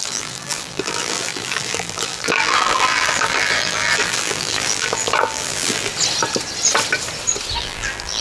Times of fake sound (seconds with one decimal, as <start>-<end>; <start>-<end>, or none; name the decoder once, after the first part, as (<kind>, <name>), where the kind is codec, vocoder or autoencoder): 0.0-5.9 (vocoder, BigVGAN v2); 7.6-8.2